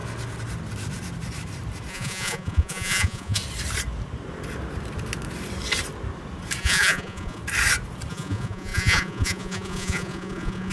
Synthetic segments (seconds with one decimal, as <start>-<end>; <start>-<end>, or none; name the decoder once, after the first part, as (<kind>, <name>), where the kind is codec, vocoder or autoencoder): 1.9-3.4 (vocoder, Vocos); 6.6-7.4; 8.1-10.7